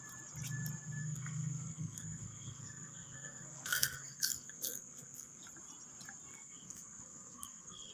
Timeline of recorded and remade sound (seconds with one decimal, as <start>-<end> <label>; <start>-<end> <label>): 0.0-1.0 recorded; 1.0-5.4 remade; 5.4-6.3 recorded; 6.3-7.9 remade